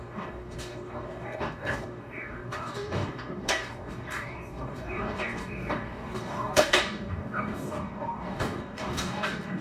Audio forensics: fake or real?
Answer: fake